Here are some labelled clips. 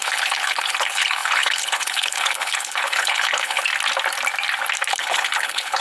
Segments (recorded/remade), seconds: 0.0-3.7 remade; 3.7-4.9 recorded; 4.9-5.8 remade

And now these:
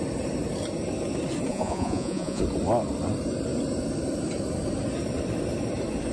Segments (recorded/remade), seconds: 0.0-1.5 recorded; 1.5-2.4 remade; 2.4-6.1 recorded

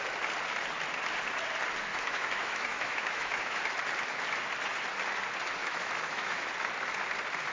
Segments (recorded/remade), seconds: 0.0-1.9 recorded; 1.9-3.6 remade; 3.6-5.6 recorded; 5.6-6.5 remade; 6.5-7.5 recorded

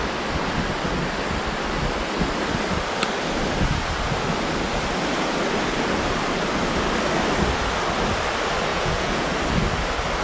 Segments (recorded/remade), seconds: 0.0-8.7 recorded; 8.7-9.3 remade; 9.3-10.2 recorded